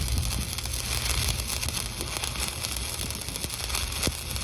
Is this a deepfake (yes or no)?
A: no